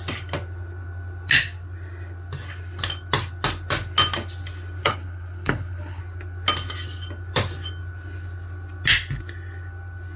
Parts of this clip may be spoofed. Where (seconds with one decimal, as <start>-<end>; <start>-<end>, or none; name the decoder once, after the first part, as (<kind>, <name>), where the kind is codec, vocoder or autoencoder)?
4.8-6.0 (codec, HILCodec)